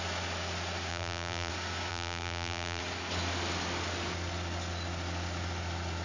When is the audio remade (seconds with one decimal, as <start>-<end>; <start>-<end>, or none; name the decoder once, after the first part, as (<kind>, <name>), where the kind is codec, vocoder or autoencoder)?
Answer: 0.9-1.5 (vocoder, BigVGAN v2); 1.9-2.8